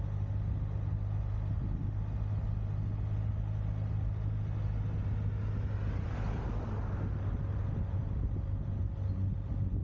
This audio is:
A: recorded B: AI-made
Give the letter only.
A